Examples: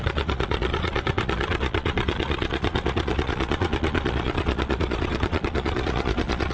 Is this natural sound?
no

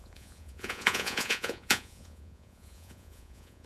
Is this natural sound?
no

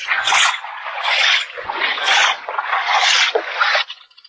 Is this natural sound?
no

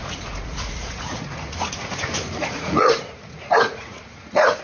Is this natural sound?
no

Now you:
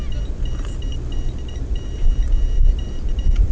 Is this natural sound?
yes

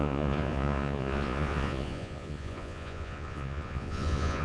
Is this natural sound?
no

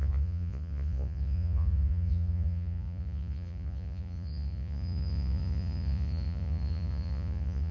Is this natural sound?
no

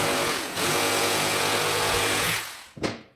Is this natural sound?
no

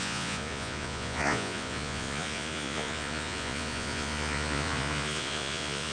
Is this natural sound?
no